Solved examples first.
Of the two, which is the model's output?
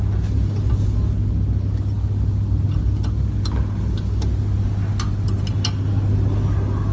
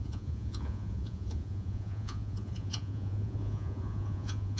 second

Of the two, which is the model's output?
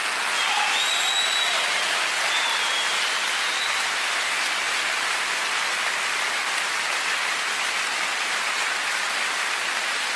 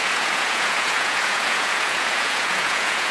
second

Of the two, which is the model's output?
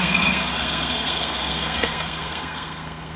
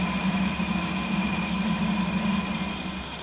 first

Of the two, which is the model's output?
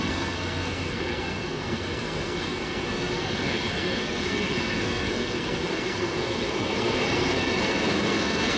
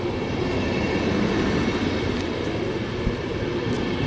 first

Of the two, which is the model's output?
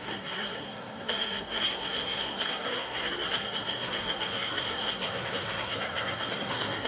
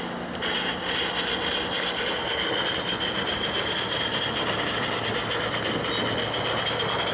first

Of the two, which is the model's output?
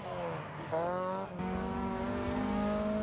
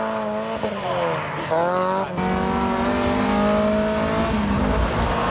first